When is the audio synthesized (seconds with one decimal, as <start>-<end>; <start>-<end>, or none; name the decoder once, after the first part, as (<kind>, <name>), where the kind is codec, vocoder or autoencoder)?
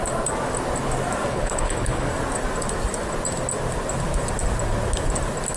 1.3-2.1 (codec, HILCodec)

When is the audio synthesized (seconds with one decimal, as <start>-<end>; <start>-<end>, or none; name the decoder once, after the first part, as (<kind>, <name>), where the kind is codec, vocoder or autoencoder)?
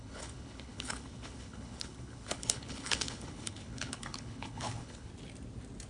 0.0-5.1 (codec, HILCodec)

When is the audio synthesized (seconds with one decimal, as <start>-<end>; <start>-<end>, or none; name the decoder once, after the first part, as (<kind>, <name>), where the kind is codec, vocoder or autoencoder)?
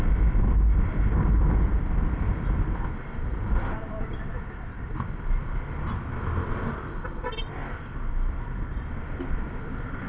0.0-7.6 (vocoder, BigVGAN v2); 8.1-10.1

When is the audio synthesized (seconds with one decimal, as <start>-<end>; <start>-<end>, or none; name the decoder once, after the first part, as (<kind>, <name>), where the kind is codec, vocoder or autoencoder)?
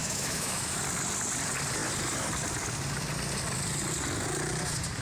0.0-0.8 (autoencoder, DAC-VAE)